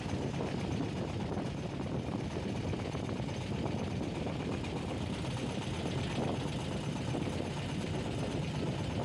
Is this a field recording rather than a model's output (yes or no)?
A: yes